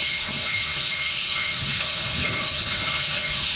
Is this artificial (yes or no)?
yes